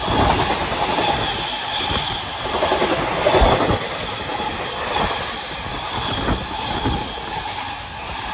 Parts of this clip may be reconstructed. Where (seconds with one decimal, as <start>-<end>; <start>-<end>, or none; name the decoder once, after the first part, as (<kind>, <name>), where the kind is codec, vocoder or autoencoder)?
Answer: none